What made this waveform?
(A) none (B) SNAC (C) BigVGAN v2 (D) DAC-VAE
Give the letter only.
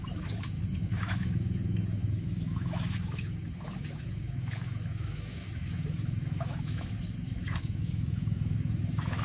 D